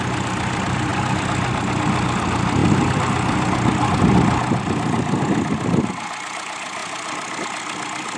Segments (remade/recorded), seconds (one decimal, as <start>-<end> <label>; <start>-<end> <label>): 0.0-8.2 recorded